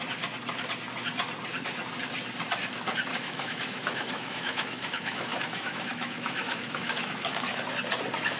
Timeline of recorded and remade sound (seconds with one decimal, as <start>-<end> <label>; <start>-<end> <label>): 0.0-3.1 recorded; 3.1-7.7 remade; 7.7-8.4 recorded